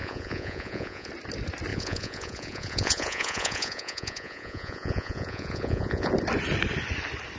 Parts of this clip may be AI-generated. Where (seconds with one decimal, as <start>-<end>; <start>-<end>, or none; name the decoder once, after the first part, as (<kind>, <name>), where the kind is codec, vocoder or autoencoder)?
0.0-1.1 (vocoder, Vocos); 1.7-6.1